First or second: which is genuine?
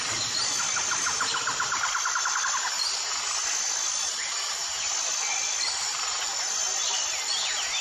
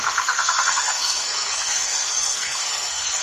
first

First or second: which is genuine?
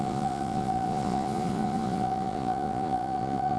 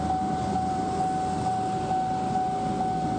second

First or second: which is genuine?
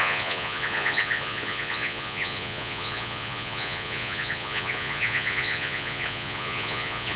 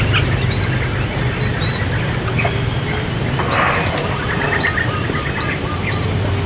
second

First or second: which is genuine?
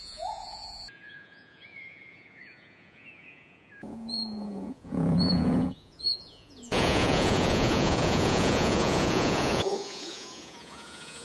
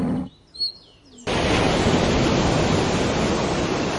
second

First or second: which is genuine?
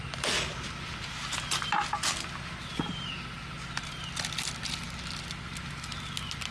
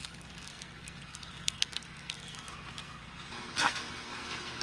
first